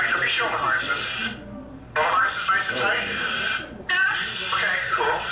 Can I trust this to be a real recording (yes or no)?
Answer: yes